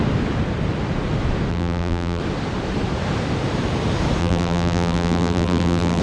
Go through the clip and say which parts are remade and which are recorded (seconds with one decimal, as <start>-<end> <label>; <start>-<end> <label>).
0.0-1.5 recorded; 1.5-2.2 remade; 2.2-4.2 recorded; 4.2-6.0 remade